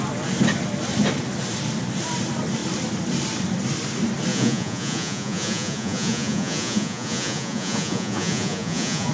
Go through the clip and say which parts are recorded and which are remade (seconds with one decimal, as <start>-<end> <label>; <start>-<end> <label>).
0.0-4.3 recorded; 4.3-9.1 remade